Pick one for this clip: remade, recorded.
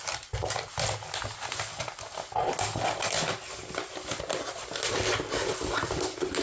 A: recorded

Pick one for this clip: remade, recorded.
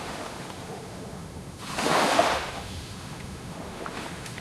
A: remade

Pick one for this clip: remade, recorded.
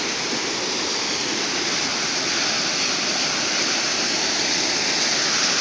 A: recorded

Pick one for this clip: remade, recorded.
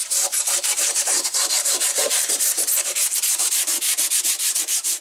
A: remade